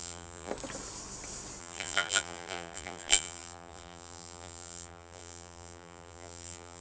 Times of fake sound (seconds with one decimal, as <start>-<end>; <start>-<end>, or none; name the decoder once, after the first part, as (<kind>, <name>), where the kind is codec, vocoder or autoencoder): 0.0-0.5 (vocoder, BigVGAN v2); 1.6-6.8